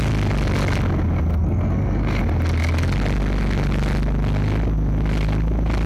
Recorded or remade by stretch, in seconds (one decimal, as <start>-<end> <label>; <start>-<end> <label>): 0.0-1.3 recorded; 1.3-2.2 remade; 2.2-5.9 recorded